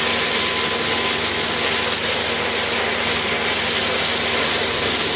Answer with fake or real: real